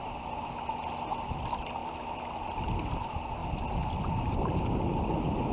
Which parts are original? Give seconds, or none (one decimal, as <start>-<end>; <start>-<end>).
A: 0.0-5.5